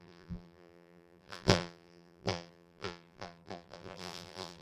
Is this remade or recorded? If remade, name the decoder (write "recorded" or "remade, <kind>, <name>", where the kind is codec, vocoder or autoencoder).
remade, vocoder, BigVGAN v2